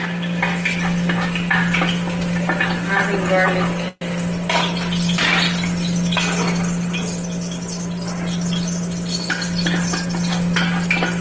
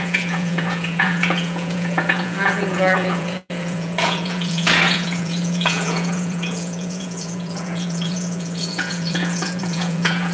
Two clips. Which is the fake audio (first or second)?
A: second